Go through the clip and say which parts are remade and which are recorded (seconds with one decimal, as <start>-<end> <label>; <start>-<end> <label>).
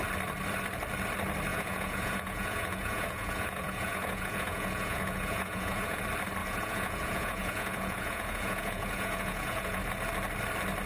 0.0-1.5 recorded; 1.5-6.0 remade; 6.0-6.4 recorded; 6.4-9.8 remade; 9.8-10.9 recorded